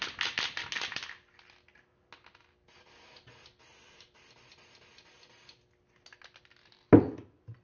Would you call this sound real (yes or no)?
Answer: yes